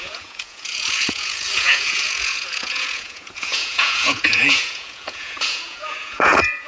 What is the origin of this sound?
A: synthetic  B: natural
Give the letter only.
A